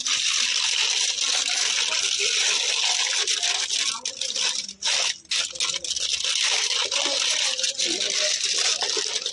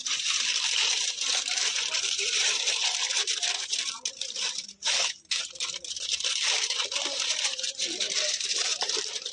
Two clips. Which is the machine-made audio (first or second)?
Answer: second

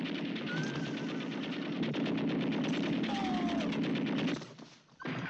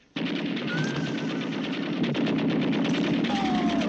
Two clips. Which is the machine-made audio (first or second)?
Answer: second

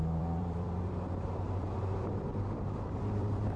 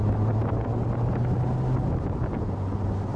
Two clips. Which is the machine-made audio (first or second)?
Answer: first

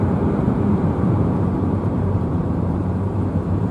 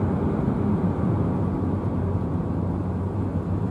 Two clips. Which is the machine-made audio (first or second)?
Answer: first